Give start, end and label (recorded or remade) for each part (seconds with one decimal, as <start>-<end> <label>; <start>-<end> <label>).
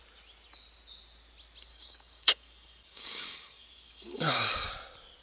0.0-1.7 recorded; 1.7-4.7 remade; 4.7-5.2 recorded